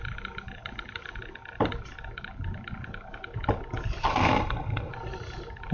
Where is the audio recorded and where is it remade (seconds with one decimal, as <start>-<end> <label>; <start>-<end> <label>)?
0.0-4.1 recorded; 4.1-4.9 remade; 4.9-5.7 recorded